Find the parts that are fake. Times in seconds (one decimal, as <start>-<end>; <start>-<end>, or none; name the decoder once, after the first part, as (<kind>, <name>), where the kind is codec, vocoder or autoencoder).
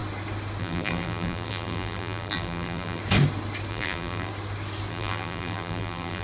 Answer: 0.6-3.0 (vocoder, BigVGAN v2); 3.7-4.3; 4.9-6.2